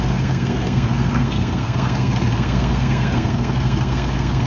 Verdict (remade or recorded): remade